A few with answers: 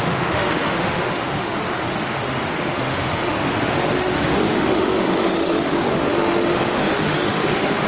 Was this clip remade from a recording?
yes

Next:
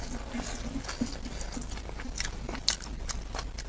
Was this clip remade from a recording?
no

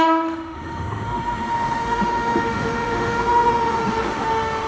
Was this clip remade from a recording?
yes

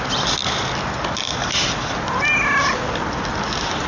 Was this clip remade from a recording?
no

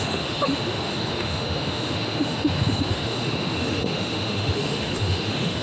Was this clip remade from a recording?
yes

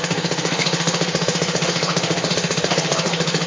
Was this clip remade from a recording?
yes